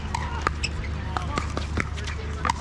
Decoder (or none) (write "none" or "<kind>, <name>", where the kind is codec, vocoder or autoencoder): none